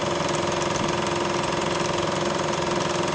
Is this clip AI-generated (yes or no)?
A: no